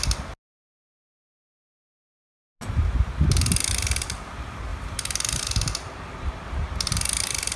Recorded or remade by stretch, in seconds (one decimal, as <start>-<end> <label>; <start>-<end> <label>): 0.0-4.7 recorded; 4.7-7.6 remade